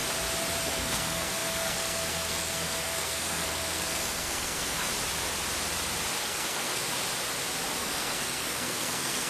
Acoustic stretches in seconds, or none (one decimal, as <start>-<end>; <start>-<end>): 0.0-0.6; 4.9-6.2; 6.8-7.8